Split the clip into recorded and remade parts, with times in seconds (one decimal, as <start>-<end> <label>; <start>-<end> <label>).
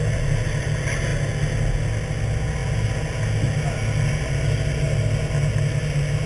0.0-6.3 recorded